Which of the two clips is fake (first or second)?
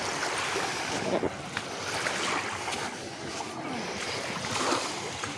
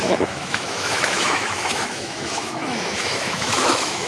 second